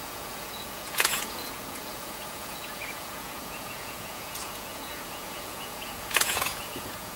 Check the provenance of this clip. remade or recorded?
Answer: remade